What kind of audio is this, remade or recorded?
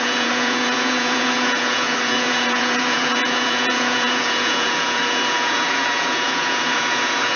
remade